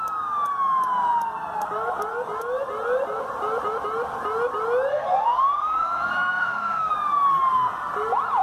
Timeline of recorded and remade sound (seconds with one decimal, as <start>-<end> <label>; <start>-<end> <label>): 0.0-4.9 recorded; 4.9-6.9 remade; 6.9-8.4 recorded